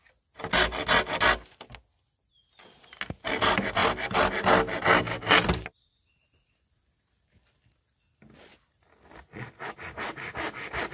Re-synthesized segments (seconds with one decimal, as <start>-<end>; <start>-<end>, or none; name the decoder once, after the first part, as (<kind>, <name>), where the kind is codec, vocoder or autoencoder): 3.8-4.3 (vocoder, BigVGAN v2)